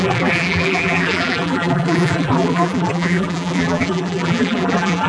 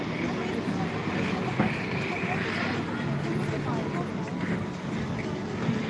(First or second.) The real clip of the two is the second